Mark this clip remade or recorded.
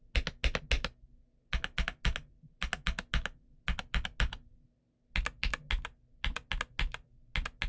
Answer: recorded